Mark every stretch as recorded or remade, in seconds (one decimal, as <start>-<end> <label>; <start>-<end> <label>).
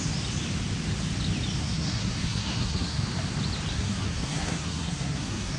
0.0-1.6 recorded; 1.6-3.0 remade; 3.0-3.7 recorded; 3.7-5.6 remade